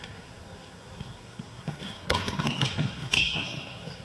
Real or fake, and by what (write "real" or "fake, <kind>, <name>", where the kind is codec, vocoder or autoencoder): fake, codec, SNAC